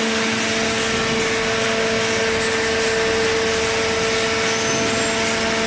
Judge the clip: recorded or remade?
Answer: recorded